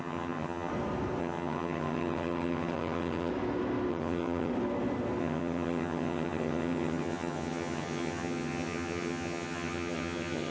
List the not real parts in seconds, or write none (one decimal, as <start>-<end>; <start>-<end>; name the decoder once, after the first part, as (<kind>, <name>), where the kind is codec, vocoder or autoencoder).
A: 0.0-0.7 (vocoder, HiFi-GAN); 1.2-3.3; 3.9-4.5; 5.2-10.5